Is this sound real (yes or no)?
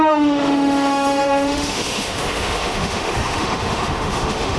no